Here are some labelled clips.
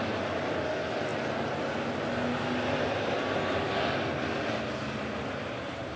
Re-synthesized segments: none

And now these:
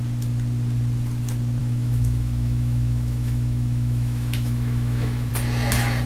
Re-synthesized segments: 1.6-5.3

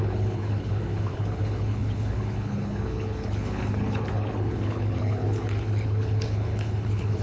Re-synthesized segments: 0.0-7.2

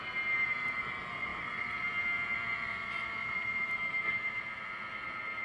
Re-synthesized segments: none

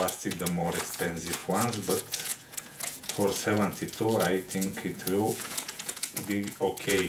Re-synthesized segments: 0.0-7.1

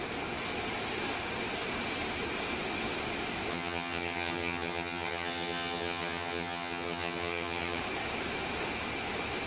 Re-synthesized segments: 3.5-7.8

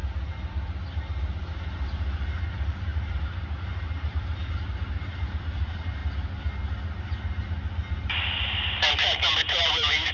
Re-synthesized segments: 0.0-6.0; 8.2-10.1

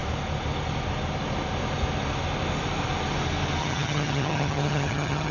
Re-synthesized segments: 3.6-5.3